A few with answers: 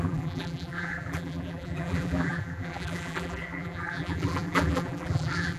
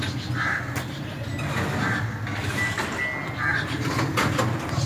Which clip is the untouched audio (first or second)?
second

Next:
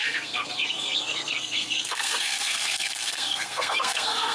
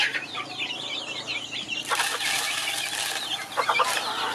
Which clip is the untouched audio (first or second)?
second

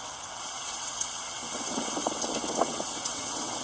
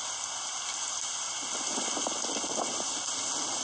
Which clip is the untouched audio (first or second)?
second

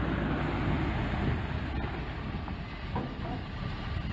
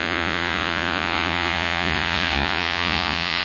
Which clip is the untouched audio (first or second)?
first